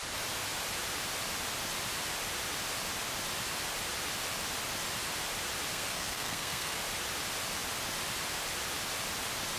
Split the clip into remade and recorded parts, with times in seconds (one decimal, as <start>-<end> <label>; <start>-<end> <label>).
0.0-5.7 recorded; 5.7-6.8 remade; 6.8-9.6 recorded